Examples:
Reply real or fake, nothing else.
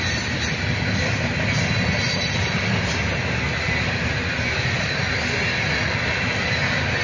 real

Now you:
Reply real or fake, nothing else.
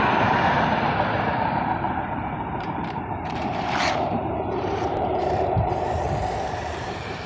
fake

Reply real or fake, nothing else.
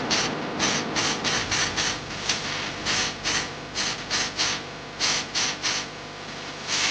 real